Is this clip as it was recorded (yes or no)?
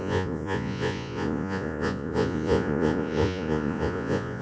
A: no